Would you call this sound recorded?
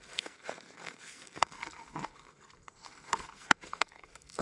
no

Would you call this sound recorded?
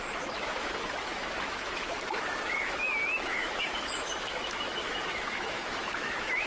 no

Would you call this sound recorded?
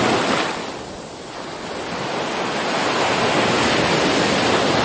yes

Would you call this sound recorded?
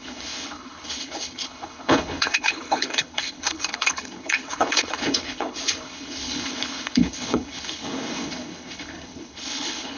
no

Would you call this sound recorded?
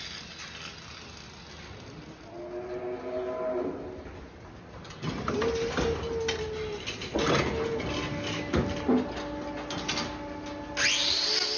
yes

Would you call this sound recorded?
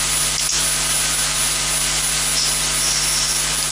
yes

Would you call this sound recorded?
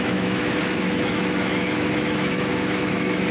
no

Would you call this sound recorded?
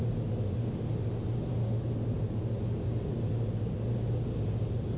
yes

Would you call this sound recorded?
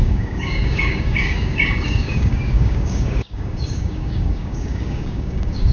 no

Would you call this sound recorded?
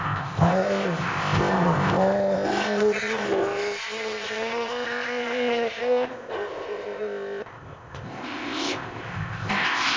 no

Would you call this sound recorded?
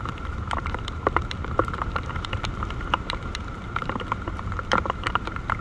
no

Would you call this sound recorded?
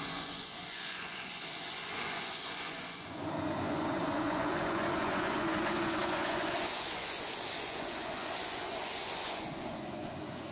no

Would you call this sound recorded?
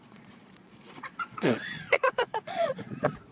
no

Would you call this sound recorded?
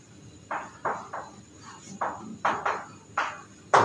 yes